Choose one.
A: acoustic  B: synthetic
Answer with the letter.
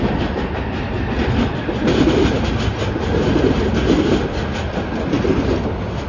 A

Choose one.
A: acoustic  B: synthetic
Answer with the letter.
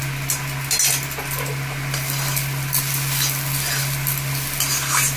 A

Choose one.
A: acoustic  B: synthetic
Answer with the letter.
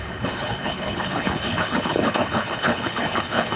B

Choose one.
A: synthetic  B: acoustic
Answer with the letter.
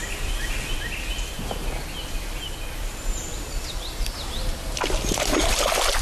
B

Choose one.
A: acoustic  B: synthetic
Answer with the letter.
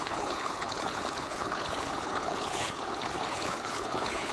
B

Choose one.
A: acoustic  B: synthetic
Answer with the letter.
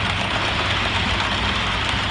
A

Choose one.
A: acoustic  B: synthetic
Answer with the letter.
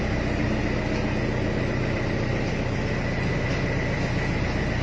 A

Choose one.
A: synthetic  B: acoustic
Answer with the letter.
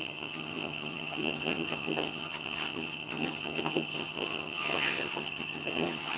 A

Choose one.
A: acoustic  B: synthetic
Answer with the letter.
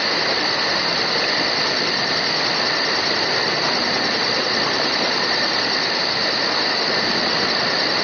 A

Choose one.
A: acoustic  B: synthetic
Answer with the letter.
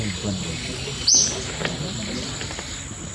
A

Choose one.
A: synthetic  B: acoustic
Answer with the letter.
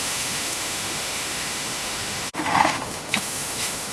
A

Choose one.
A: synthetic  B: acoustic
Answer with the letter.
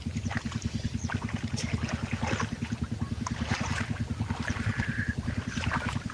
B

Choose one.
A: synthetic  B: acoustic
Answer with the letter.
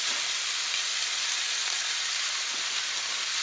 B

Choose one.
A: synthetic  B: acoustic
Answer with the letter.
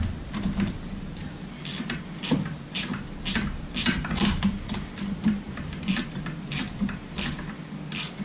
A